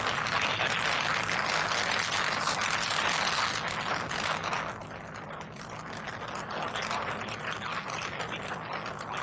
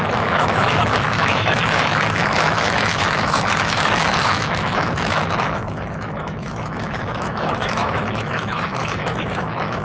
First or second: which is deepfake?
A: second